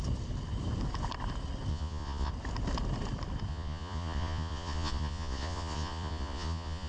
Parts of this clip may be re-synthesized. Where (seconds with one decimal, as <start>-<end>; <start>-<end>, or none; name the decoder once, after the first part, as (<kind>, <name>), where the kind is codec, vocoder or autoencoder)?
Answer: 1.7-2.3 (vocoder, Vocos); 3.5-6.9

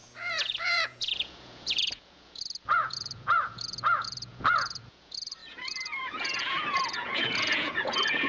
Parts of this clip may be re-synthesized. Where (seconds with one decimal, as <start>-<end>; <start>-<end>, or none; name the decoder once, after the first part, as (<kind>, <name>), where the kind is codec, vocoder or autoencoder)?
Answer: 0.0-8.3 (vocoder, Vocos)

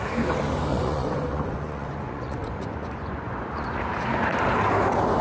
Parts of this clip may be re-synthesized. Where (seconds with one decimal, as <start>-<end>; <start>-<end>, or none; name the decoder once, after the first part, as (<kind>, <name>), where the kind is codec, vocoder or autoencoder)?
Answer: 0.7-3.8 (vocoder, Vocos)

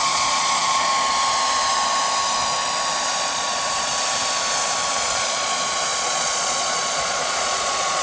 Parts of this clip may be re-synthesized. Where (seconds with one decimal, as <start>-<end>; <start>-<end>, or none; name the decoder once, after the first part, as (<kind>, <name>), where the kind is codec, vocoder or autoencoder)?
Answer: 0.0-0.9 (vocoder, Vocos); 3.2-3.9; 4.9-8.0

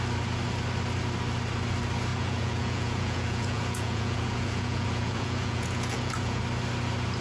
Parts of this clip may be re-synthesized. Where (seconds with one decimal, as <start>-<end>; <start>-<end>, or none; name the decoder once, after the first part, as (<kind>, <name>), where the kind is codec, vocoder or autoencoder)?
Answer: 2.1-6.4 (vocoder, Vocos)

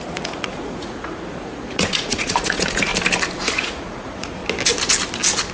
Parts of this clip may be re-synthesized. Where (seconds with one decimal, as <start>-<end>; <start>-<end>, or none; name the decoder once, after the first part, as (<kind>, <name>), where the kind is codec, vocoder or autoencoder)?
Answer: 0.0-2.9 (vocoder, Vocos); 3.5-4.4

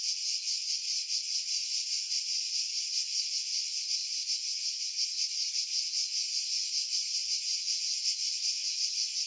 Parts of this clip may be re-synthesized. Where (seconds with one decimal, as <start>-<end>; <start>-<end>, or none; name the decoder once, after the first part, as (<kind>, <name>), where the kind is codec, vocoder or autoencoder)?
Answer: 1.2-2.8 (vocoder, Vocos)

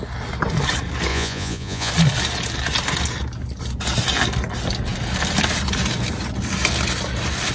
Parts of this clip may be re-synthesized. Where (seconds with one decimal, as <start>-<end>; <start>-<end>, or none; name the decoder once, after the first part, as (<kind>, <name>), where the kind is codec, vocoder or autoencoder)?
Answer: 1.1-1.9 (vocoder, Vocos)